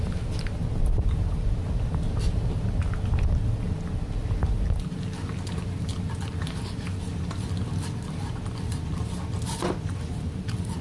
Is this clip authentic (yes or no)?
yes